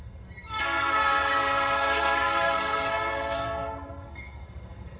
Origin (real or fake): fake